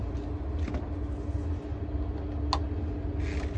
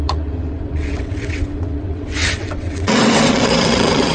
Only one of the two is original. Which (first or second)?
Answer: first